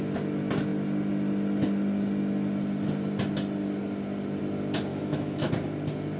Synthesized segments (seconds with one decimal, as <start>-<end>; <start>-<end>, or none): 4.9-5.5